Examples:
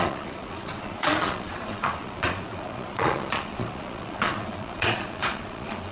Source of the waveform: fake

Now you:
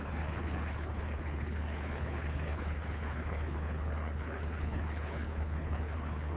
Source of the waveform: fake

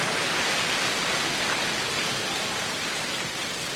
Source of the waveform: real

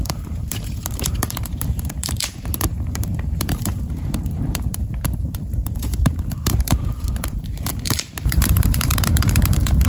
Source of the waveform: fake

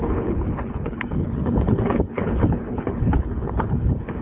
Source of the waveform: fake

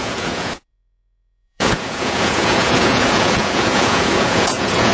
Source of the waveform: fake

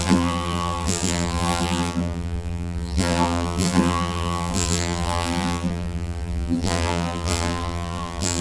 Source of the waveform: fake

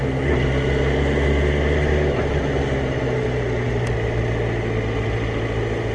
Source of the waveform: real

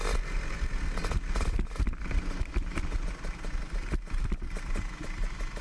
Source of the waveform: real